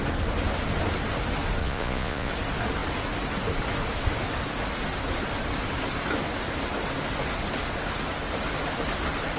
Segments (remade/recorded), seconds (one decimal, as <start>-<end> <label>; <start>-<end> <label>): 0.0-1.6 recorded; 1.6-2.3 remade; 2.3-9.4 recorded